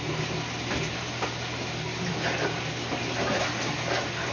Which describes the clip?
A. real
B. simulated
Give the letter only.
A